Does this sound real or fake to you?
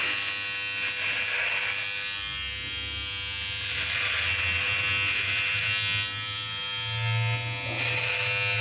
real